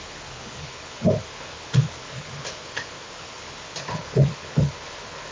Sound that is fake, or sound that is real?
fake